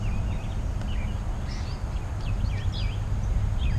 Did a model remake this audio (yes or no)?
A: no